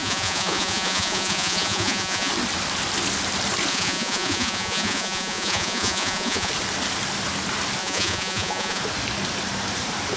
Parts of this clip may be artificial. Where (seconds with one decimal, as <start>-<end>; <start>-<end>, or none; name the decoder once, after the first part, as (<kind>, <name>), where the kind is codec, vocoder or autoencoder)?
0.0-2.3 (vocoder, Vocos); 3.7-6.5; 7.8-8.8